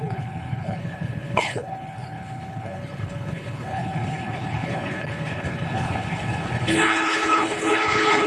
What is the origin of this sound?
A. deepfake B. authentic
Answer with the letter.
A